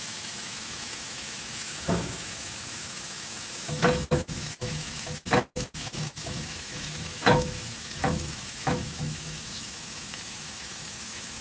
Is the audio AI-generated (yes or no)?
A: yes